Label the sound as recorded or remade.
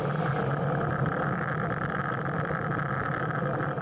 recorded